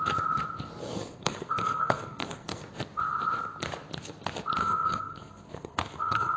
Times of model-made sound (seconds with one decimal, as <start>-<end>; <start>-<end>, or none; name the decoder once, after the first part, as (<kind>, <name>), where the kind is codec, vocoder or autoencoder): 0.8-2.6 (codec, SNAC); 4.6-6.4